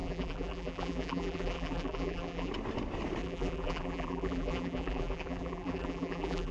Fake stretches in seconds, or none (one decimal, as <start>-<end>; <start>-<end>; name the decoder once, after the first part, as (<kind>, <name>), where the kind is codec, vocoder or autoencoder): 0.0-2.5 (vocoder, BigVGAN v2); 3.2-6.5